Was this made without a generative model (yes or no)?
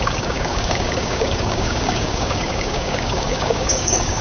no